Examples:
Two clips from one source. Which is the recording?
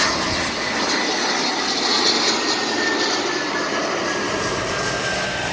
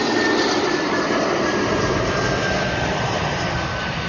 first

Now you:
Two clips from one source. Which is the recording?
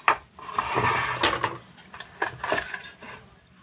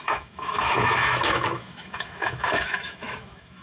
first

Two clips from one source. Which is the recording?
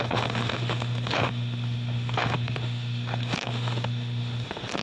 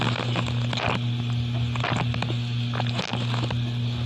second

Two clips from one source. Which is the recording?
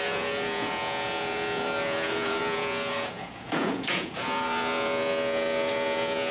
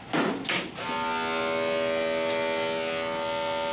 second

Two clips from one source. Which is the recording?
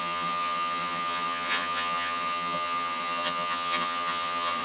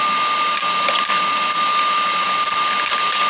second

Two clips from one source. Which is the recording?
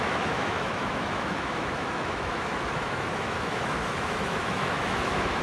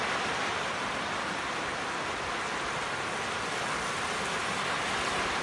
second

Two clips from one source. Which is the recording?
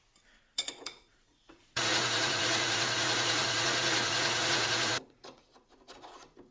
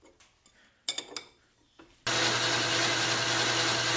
second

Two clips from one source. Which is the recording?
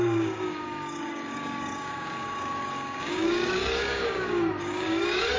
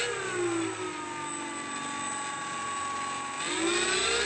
second